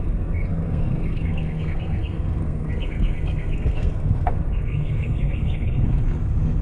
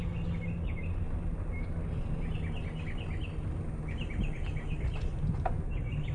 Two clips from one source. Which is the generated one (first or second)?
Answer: first